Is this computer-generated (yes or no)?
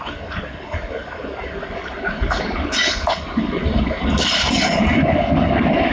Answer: yes